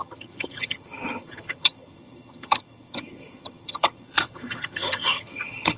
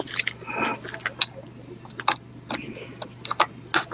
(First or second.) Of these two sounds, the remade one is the first